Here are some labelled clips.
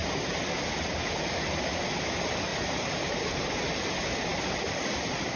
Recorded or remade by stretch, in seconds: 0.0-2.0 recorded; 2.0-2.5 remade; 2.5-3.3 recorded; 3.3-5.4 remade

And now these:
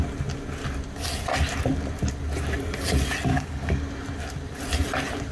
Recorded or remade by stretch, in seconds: 0.0-3.3 recorded; 3.3-3.8 remade; 3.8-5.3 recorded

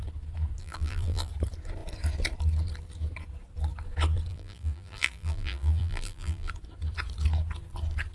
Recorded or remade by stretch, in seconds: 0.0-0.6 recorded; 0.6-1.3 remade; 1.3-4.3 recorded; 4.3-6.5 remade; 6.5-8.1 recorded